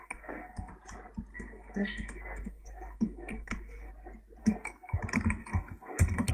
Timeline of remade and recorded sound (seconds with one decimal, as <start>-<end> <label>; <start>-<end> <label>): 0.0-0.7 remade; 0.7-1.3 recorded; 1.3-3.9 remade; 3.9-4.4 recorded; 4.4-5.0 remade; 5.0-5.4 recorded; 5.4-6.3 remade